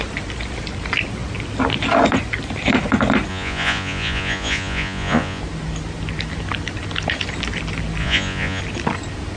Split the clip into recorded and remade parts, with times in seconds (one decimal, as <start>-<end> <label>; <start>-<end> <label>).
0.0-3.3 recorded; 3.3-5.4 remade; 5.4-8.0 recorded; 8.0-8.6 remade; 8.6-9.4 recorded